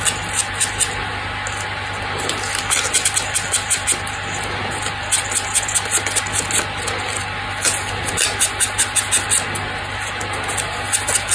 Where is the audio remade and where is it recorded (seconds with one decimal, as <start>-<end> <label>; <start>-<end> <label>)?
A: 0.0-11.3 recorded